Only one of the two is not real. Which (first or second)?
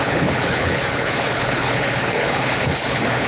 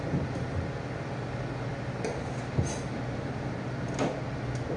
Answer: first